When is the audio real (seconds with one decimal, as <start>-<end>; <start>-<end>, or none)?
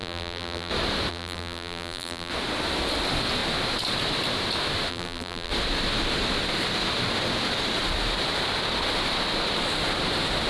0.7-1.1; 2.3-4.9; 5.5-10.5